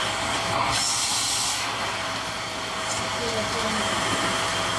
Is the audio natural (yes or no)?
yes